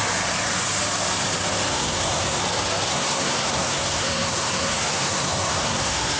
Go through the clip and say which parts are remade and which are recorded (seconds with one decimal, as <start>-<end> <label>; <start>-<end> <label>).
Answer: 0.0-1.7 recorded; 1.7-2.4 remade; 2.4-2.9 recorded; 2.9-6.2 remade